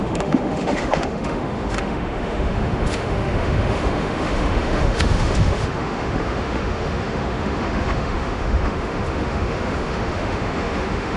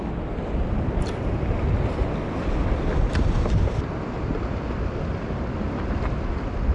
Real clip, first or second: second